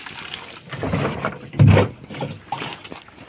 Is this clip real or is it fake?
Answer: real